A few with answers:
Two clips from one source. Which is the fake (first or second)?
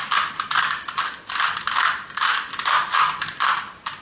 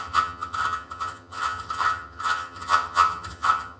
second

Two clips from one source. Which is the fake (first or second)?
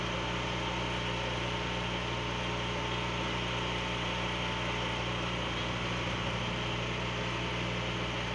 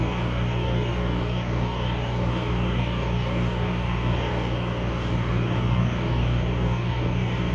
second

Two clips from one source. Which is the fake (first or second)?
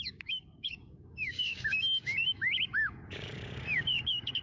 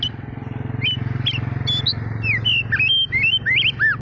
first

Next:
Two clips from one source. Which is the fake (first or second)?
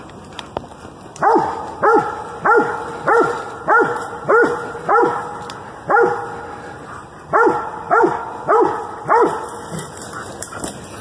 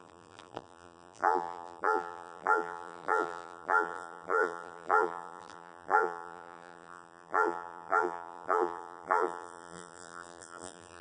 second